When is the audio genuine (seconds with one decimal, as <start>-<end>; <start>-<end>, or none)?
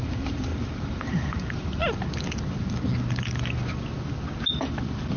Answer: 1.8-5.2